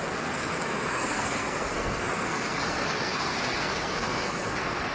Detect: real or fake fake